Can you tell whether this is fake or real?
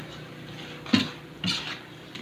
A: real